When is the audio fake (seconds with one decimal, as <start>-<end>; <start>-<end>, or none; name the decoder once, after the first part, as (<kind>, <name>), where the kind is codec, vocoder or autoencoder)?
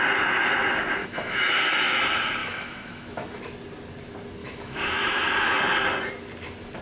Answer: 1.0-2.0 (autoencoder, DAC-VAE); 2.4-3.4; 4.4-5.6